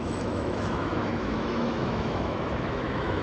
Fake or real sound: fake